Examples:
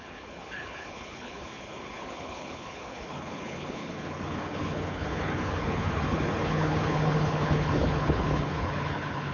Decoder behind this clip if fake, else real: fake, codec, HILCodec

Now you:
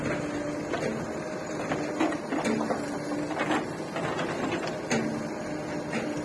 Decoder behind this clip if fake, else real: real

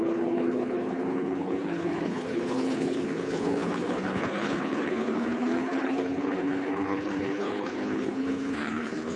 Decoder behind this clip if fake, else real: fake, codec, HILCodec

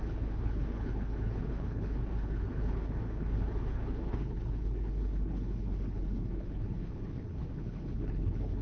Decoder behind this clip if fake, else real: fake, codec, HILCodec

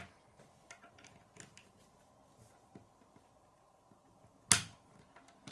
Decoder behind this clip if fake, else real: real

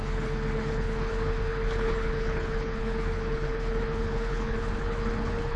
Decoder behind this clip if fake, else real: fake, codec, HILCodec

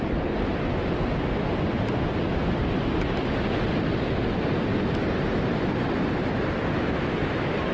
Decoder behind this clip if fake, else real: real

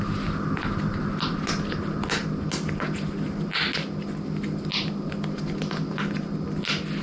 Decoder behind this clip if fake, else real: real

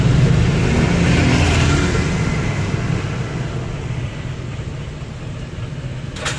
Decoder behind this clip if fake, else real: real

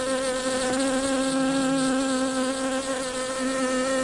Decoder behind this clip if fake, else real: real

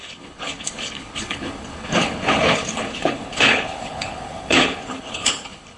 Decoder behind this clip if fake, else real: fake, codec, HILCodec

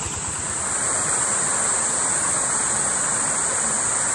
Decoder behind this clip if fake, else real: real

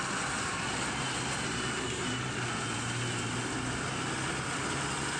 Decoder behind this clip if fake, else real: real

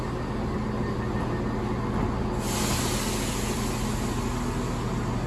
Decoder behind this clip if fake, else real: real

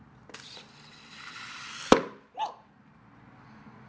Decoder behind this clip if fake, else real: real